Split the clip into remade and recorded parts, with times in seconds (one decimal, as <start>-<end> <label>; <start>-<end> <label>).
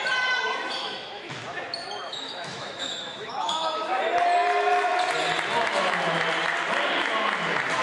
0.0-0.8 recorded; 0.8-1.3 remade; 1.3-2.1 recorded; 2.1-4.0 remade; 4.0-7.8 recorded